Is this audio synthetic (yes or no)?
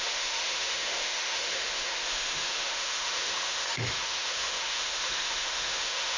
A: yes